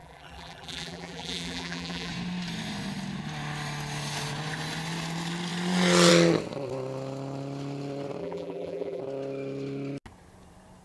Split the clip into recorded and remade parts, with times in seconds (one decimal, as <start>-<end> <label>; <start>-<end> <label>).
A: 0.0-2.1 remade; 2.1-8.2 recorded; 8.2-9.0 remade; 9.0-10.8 recorded